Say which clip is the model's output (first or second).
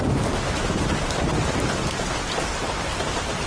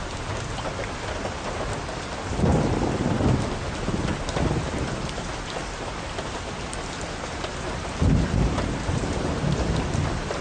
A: first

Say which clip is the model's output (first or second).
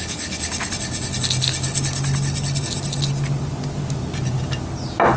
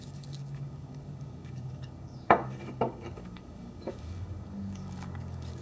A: second